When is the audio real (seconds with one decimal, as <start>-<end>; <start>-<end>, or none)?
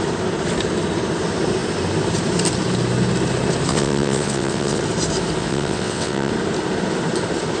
0.0-3.7; 4.8-5.4; 6.3-7.6